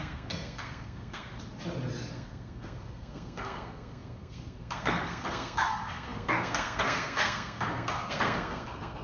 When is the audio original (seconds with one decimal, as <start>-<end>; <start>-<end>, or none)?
1.3-2.1